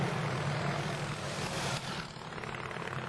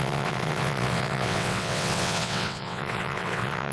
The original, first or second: first